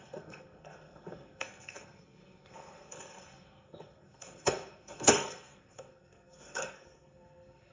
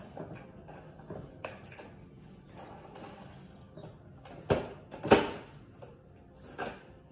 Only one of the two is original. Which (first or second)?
second